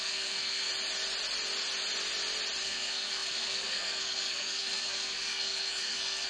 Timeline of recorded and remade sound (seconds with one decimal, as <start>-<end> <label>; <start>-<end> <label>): 0.0-0.7 remade; 0.7-2.6 recorded; 2.6-6.3 remade